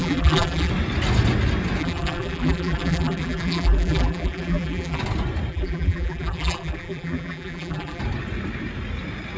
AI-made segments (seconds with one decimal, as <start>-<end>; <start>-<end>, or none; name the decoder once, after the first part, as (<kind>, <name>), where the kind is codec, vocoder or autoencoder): 0.0-0.7 (vocoder, BigVGAN v2); 1.8-5.0; 5.5-8.0

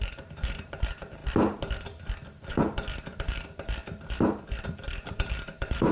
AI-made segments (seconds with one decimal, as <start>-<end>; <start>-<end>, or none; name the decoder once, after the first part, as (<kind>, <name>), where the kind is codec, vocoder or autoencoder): 0.0-1.2 (vocoder, BigVGAN v2); 2.5-3.8; 4.6-5.9

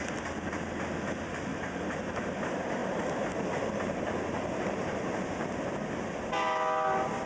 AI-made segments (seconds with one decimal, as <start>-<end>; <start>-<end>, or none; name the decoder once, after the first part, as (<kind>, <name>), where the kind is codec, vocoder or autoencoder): 1.5-2.2 (vocoder, BigVGAN v2); 2.8-5.7

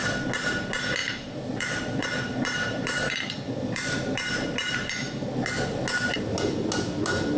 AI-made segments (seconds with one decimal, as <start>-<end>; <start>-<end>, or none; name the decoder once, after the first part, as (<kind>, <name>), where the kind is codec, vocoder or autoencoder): 1.0-5.3 (vocoder, BigVGAN v2)

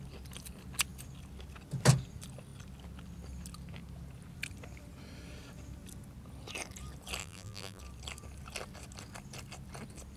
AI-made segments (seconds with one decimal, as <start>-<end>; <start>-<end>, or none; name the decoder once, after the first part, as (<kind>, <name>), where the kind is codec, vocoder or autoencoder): 7.2-7.8 (vocoder, BigVGAN v2)

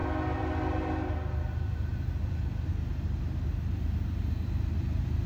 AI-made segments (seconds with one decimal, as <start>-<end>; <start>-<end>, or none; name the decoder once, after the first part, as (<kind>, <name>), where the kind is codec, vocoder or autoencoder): none

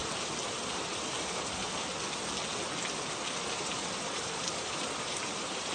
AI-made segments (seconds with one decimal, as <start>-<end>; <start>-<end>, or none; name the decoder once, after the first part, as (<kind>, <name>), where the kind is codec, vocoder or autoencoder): 0.0-1.6 (vocoder, BigVGAN v2); 3.5-5.7